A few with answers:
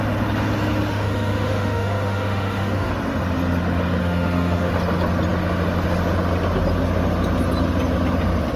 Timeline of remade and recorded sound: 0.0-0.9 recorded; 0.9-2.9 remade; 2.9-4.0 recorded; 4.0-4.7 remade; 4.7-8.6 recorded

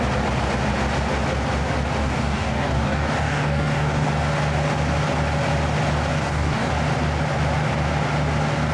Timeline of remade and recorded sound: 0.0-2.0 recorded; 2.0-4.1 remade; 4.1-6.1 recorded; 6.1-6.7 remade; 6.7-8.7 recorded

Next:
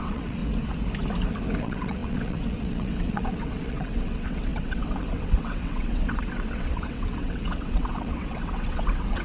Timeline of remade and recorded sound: 0.0-0.4 remade; 0.4-1.6 recorded; 1.6-9.2 remade